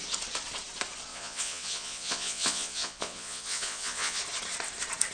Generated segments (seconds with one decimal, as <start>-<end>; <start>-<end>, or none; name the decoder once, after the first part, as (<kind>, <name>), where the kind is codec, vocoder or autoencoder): 1.1-4.2 (vocoder, Vocos)